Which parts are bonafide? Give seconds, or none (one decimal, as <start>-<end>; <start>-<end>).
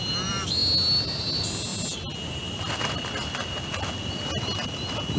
0.0-5.2